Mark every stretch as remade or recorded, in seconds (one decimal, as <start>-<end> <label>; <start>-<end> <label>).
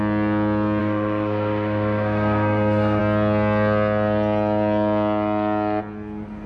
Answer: 0.0-0.8 recorded; 0.8-3.0 remade; 3.0-6.5 recorded